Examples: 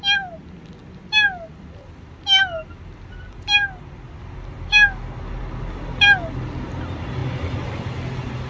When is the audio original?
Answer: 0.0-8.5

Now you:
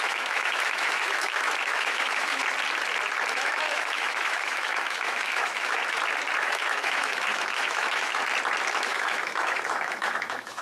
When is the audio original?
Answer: 2.4-3.3; 5.8-6.4; 8.2-8.7

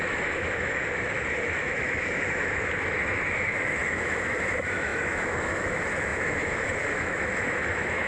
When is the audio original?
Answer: none

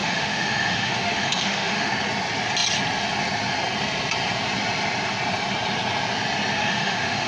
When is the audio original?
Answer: 1.9-6.5

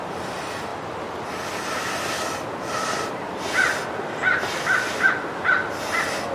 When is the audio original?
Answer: 0.0-6.3

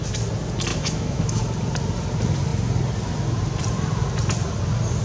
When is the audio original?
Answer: 0.0-0.7; 1.4-5.0

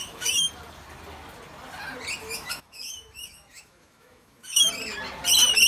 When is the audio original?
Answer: 0.5-2.2; 4.7-5.7

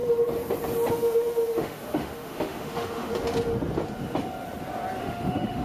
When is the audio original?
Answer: 0.0-0.9; 3.1-5.0